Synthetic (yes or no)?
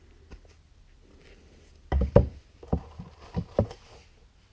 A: no